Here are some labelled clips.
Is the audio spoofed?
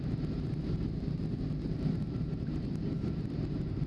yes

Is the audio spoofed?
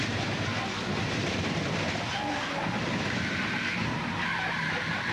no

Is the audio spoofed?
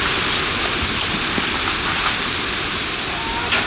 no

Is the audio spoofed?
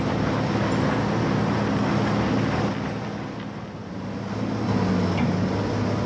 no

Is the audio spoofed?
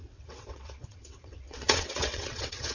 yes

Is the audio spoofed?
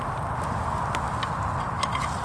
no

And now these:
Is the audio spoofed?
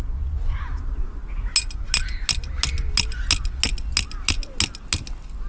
no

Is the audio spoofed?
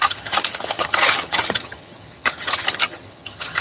yes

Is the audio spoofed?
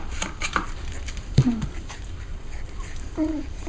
yes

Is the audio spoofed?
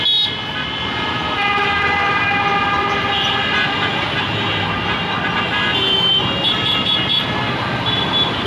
no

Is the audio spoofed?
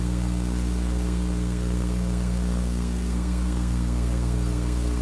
yes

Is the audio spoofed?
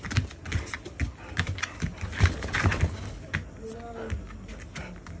no